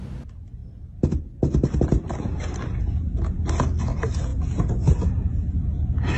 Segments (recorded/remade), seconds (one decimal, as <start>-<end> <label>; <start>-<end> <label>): 0.0-6.2 recorded

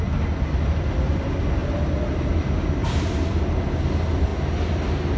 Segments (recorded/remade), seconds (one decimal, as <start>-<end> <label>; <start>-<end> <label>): 0.0-1.6 recorded; 1.6-2.4 remade; 2.4-2.8 recorded; 2.8-3.7 remade; 3.7-5.2 recorded